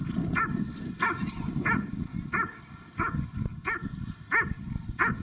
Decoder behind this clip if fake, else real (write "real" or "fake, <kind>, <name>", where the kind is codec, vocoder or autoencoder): real